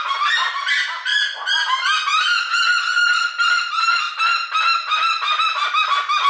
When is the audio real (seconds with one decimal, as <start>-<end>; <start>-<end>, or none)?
0.0-6.3